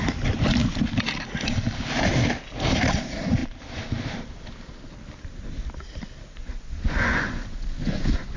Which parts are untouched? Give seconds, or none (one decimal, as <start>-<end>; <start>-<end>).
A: 0.0-6.4

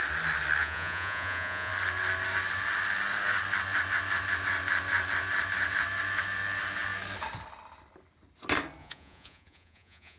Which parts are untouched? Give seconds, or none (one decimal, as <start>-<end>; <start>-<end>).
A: 0.0-0.6; 1.7-8.8

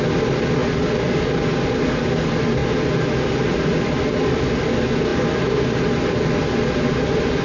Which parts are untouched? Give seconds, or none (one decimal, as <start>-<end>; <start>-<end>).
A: 0.0-7.4

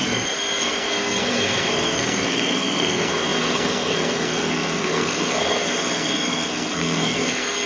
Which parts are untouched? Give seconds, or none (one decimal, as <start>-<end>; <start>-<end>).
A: none

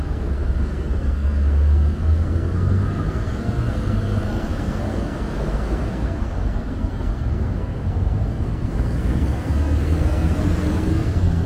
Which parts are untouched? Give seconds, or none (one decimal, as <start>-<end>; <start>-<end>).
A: none

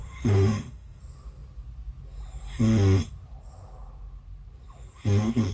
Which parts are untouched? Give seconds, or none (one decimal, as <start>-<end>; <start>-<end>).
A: 1.0-5.5

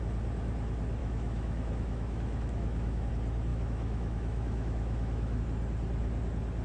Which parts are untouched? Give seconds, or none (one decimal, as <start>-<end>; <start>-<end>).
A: 0.0-1.0; 3.1-3.5; 5.4-6.6